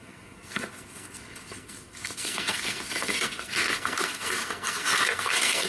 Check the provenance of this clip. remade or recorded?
remade